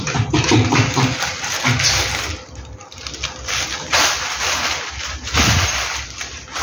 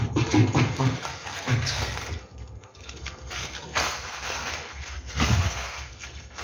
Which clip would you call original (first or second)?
first